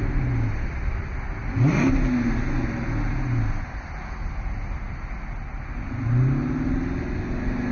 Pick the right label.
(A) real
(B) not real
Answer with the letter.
A